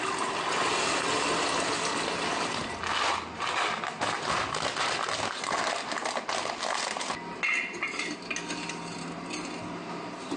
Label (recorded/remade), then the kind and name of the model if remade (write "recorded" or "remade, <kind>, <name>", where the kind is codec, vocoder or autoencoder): recorded